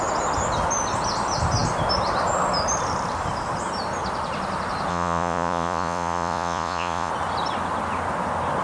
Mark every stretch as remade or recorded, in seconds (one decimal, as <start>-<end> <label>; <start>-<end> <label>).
0.0-4.9 recorded; 4.9-7.1 remade; 7.1-8.6 recorded